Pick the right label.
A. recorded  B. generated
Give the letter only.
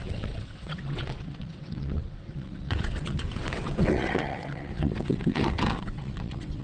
B